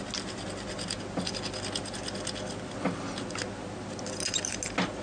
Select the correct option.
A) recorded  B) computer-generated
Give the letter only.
A